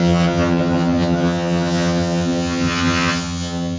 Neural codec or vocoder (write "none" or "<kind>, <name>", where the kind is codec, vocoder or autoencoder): vocoder, HiFi-GAN